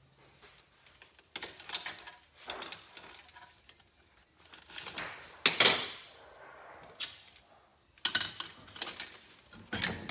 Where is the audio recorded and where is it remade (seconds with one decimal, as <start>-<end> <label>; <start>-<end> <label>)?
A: 0.0-10.1 recorded